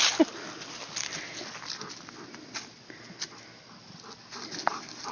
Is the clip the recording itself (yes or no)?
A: yes